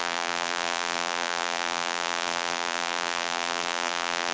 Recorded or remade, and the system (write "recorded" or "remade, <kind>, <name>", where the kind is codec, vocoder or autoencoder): remade, vocoder, BigVGAN v2